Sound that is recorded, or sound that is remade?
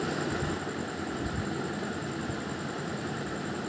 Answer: recorded